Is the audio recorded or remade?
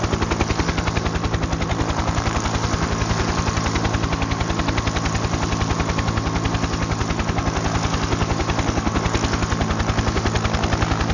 recorded